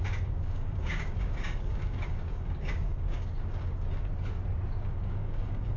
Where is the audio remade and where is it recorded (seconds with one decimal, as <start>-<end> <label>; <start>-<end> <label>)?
0.0-4.1 remade; 4.1-4.9 recorded; 4.9-5.8 remade